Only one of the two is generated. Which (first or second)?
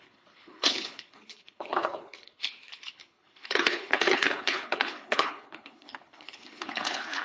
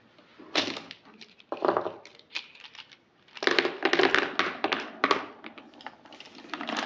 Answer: first